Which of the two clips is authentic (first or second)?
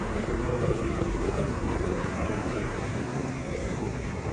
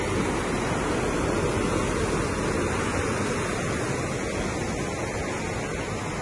second